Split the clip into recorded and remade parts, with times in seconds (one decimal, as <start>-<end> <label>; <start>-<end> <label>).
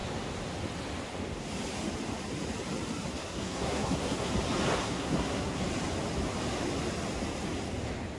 0.0-3.2 recorded; 3.2-4.3 remade; 4.3-4.8 recorded; 4.8-5.6 remade; 5.6-8.2 recorded